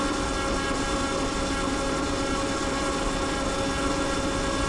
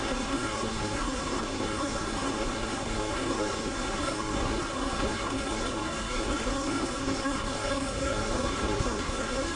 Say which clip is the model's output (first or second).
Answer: second